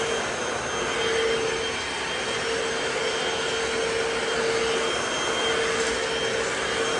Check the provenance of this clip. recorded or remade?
recorded